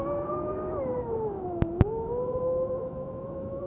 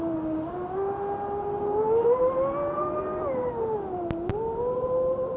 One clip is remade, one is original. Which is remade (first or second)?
first